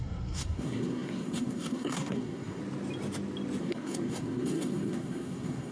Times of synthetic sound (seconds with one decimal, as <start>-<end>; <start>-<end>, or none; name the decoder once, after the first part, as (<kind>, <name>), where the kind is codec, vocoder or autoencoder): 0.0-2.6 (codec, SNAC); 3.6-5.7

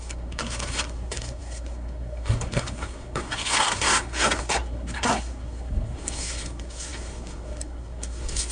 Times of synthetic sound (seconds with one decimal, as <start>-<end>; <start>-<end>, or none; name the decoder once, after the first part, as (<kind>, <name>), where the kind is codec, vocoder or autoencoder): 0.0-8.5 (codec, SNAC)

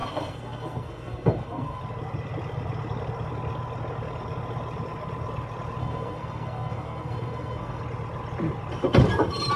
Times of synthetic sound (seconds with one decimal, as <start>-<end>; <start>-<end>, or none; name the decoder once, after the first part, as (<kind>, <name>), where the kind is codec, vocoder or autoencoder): 0.0-1.8 (codec, SNAC); 5.8-7.8

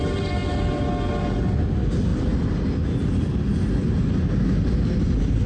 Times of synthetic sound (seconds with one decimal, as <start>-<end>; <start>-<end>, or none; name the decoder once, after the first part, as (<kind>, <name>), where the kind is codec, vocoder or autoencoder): none

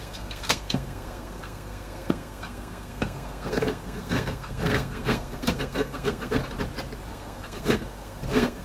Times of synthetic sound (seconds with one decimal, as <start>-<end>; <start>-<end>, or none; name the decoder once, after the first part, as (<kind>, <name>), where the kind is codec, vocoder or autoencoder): 0.0-6.4 (codec, SNAC); 7.1-8.6